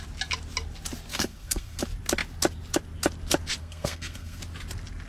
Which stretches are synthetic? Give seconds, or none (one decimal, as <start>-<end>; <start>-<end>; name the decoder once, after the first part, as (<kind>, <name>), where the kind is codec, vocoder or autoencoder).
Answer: 1.1-1.8 (codec, SNAC); 3.6-4.4